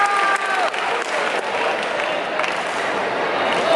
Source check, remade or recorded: recorded